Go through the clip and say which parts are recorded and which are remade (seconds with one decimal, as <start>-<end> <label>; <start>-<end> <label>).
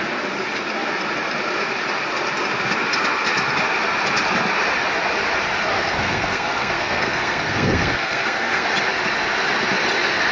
0.0-5.7 recorded; 5.7-8.7 remade; 8.7-10.3 recorded